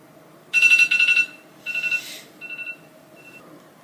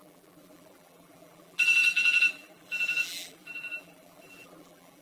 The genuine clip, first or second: first